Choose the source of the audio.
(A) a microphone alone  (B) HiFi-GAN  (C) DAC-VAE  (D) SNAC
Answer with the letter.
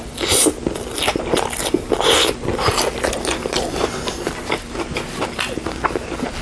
A